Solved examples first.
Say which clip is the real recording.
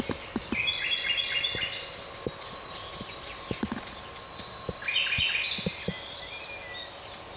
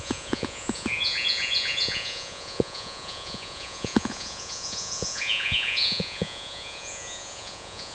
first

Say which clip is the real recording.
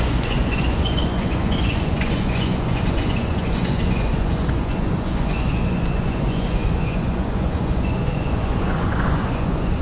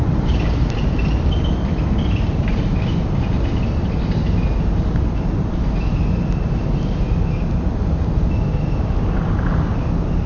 second